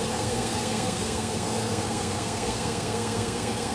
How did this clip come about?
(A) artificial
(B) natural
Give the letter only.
A